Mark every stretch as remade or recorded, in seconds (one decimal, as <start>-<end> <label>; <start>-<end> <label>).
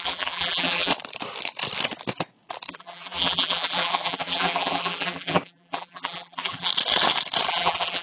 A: 0.0-0.9 remade; 0.9-2.7 recorded; 2.7-6.7 remade; 6.7-7.5 recorded; 7.5-8.0 remade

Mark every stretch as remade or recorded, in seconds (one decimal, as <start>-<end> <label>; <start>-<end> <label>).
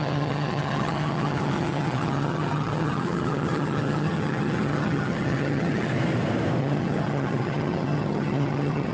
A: 0.0-5.9 remade; 5.9-6.6 recorded; 6.6-8.9 remade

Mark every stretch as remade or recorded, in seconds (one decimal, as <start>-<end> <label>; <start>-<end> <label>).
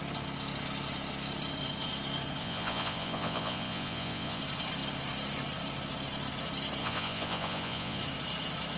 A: 0.0-2.4 recorded; 2.4-4.4 remade; 4.4-6.8 recorded; 6.8-8.0 remade; 8.0-8.8 recorded